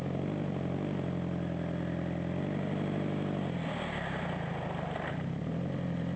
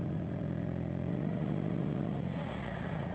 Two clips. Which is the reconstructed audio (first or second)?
second